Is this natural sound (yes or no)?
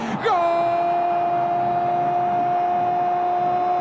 yes